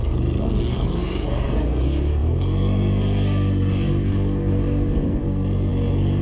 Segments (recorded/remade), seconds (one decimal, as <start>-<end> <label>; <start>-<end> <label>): 0.0-6.2 remade